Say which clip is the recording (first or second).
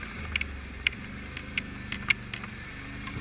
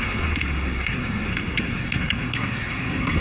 first